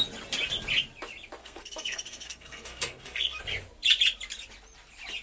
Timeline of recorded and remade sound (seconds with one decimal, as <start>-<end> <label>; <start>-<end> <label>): 0.0-1.4 recorded; 1.4-3.4 remade; 3.4-5.2 recorded